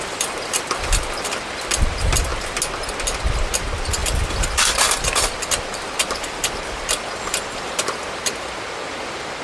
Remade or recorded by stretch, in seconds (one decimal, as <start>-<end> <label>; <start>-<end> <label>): 0.0-2.3 remade; 2.3-3.4 recorded; 3.4-9.4 remade